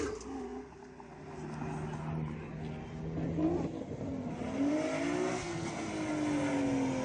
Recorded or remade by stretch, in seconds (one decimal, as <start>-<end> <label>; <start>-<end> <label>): 0.0-5.3 recorded; 5.3-5.9 remade; 5.9-7.0 recorded